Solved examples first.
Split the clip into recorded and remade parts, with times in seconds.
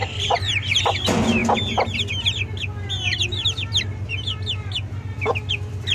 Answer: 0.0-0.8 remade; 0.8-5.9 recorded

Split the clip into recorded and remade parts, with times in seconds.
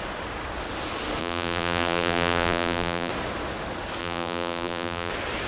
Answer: 0.0-1.2 recorded; 1.2-3.1 remade; 3.1-4.0 recorded; 4.0-5.1 remade; 5.1-5.5 recorded